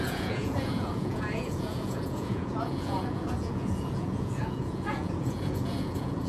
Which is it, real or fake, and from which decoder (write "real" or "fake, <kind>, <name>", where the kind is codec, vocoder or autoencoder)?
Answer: fake, vocoder, Vocos